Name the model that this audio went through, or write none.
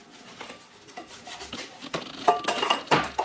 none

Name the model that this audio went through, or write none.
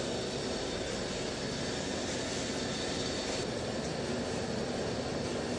none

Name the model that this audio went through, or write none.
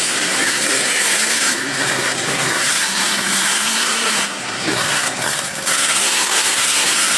codec, SNAC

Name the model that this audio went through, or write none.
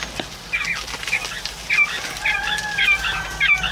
none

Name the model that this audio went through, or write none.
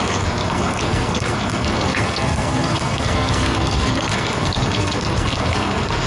codec, SNAC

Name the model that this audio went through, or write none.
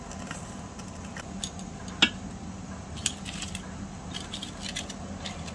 none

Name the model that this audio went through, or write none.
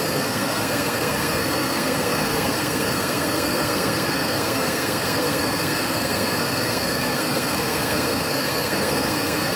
codec, SNAC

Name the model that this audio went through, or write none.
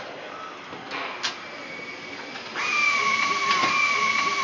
none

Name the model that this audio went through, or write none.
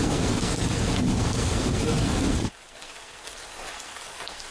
codec, SNAC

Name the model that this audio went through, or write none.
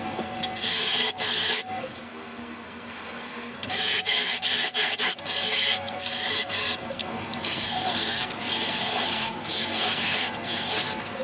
codec, SNAC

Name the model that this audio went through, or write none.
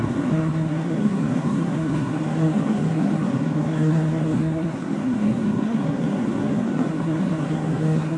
codec, SNAC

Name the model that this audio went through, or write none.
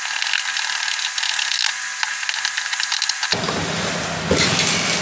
none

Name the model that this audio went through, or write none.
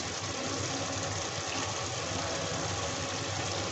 none